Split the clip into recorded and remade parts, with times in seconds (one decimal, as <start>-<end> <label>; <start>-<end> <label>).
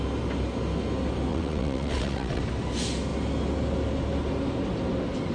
0.0-1.3 recorded; 1.3-2.4 remade; 2.4-5.3 recorded